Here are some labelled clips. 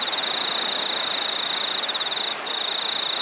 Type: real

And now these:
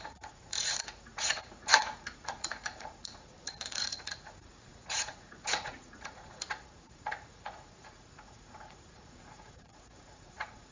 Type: fake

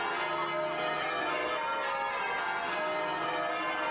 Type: real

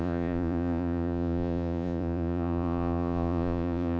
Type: fake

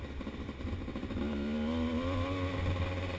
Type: real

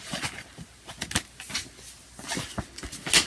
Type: real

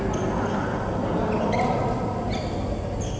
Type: real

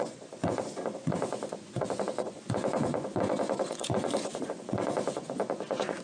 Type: fake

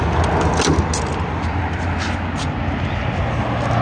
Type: real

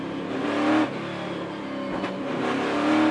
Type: real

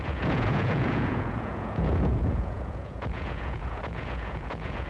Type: fake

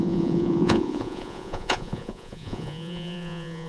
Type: fake